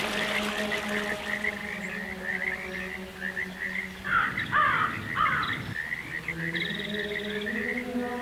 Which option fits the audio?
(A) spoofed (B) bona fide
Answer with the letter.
B